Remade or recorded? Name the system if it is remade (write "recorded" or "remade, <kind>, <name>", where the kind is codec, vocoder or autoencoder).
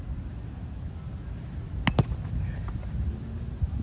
recorded